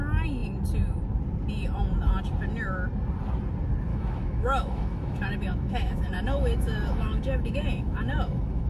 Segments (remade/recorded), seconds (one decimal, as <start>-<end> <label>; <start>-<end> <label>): 0.0-3.9 recorded; 3.9-8.7 remade